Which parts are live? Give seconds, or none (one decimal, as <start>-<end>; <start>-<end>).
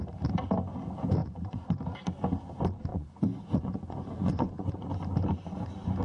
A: 0.0-1.2; 1.8-2.9; 4.7-6.0